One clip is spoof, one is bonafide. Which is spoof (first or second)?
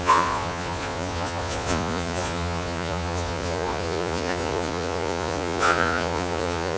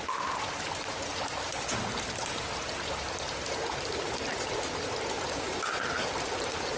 first